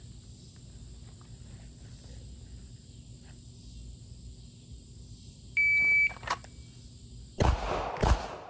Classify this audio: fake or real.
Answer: real